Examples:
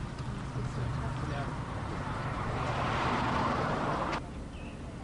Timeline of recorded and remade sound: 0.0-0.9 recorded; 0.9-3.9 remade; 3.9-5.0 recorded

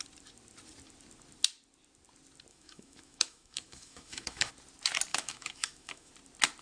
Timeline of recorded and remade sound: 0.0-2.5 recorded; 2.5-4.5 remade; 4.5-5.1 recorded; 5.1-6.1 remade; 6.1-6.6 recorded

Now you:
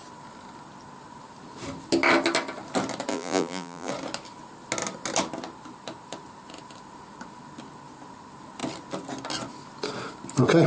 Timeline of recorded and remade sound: 0.0-3.1 recorded; 3.1-3.9 remade; 3.9-10.7 recorded

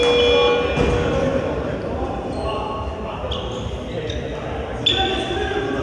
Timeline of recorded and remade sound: 0.0-5.8 recorded

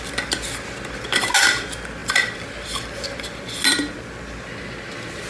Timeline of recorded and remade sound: 0.0-5.3 recorded